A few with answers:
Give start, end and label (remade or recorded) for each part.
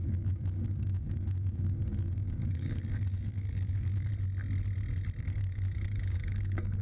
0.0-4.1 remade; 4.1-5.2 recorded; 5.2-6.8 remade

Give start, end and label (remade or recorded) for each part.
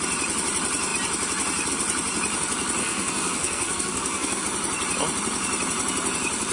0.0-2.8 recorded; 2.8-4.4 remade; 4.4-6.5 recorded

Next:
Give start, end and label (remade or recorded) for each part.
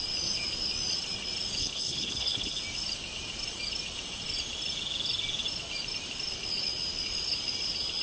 0.0-1.6 recorded; 1.6-2.6 remade; 2.6-8.0 recorded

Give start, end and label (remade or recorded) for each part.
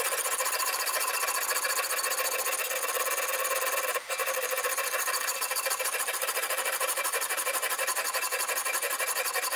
0.0-0.4 recorded; 0.4-1.1 remade; 1.1-3.9 recorded; 3.9-9.0 remade; 9.0-9.6 recorded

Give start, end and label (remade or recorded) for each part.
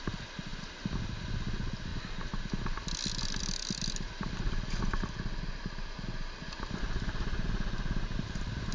0.0-8.7 recorded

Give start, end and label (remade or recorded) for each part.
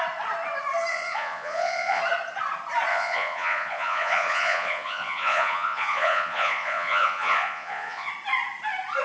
0.0-0.9 recorded; 0.9-2.0 remade; 2.0-2.9 recorded; 2.9-8.1 remade; 8.1-9.0 recorded